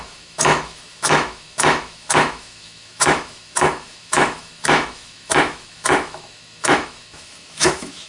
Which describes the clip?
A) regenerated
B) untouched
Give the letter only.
A